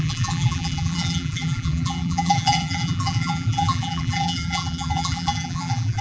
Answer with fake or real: fake